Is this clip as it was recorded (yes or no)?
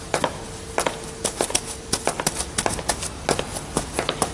yes